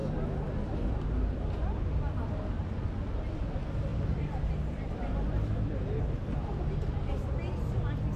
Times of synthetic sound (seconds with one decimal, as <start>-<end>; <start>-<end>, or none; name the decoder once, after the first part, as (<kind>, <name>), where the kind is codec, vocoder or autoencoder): 3.9-4.5 (vocoder, BigVGAN v2)